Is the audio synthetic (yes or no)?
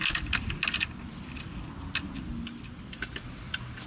no